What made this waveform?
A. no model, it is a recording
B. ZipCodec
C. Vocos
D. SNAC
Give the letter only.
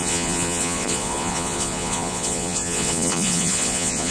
C